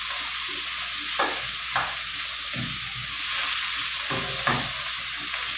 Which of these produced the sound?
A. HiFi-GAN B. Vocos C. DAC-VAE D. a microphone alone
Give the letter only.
D